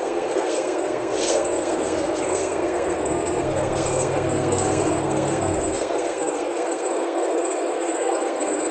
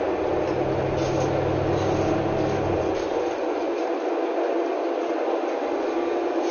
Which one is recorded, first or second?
second